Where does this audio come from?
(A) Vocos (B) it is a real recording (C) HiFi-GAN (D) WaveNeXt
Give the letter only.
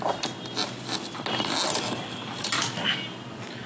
B